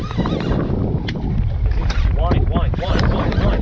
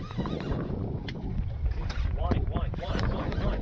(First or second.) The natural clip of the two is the first